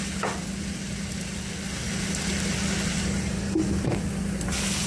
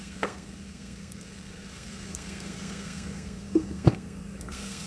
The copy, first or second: second